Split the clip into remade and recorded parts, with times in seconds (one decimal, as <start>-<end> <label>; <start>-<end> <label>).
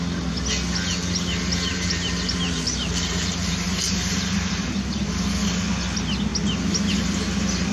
0.0-1.7 recorded; 1.7-5.2 remade; 5.2-7.7 recorded